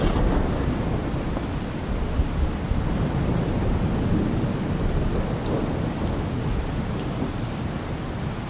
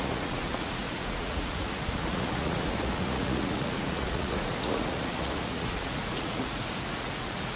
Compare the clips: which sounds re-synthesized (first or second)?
second